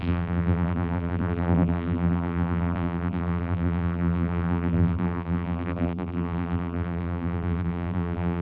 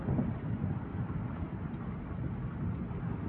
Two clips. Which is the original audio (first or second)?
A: second